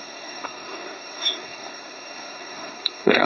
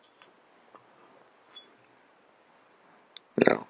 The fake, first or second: first